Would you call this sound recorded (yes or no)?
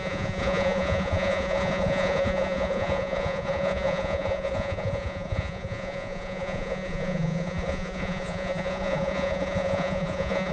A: no